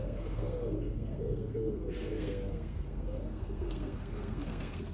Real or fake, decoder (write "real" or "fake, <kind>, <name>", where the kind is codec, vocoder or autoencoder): fake, codec, SNAC